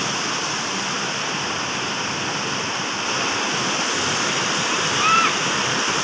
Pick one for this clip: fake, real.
real